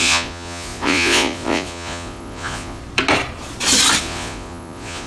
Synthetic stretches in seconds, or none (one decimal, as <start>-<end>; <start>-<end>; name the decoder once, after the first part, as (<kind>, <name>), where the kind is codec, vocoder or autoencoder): 0.0-2.8 (vocoder, Vocos); 4.0-5.1